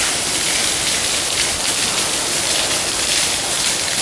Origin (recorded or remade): recorded